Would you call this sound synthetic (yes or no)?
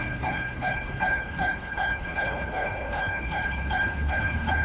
yes